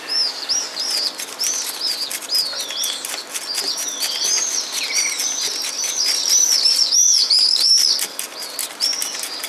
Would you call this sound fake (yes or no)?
no